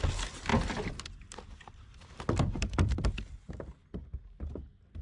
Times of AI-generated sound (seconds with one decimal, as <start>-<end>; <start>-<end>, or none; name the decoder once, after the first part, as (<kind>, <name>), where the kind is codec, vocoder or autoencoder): 0.5-3.5 (vocoder, BigVGAN v2)